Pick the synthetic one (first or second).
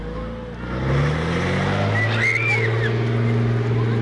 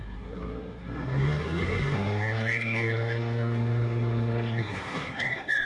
second